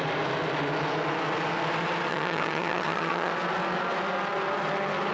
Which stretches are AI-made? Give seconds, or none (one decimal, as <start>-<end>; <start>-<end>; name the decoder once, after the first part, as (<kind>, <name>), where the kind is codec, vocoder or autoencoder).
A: 2.1-3.3 (vocoder, HiFi-GAN)